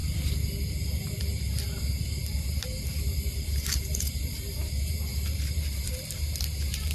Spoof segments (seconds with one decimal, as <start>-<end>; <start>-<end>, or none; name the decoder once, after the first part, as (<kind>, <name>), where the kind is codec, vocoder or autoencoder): 1.5-6.9 (vocoder, BigVGAN v2)